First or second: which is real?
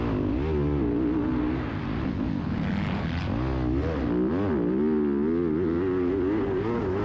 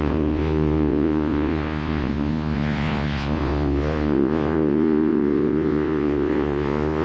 first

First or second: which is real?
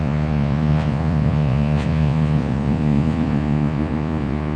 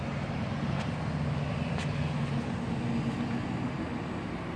second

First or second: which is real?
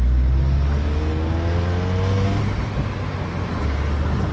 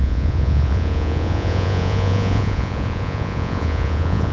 first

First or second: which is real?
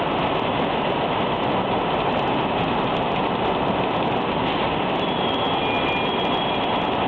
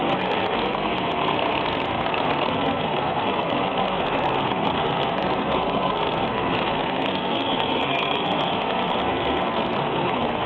first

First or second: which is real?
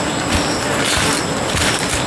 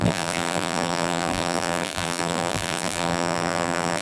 first